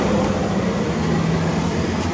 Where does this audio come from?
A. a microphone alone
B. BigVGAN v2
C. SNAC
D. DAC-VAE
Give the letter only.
A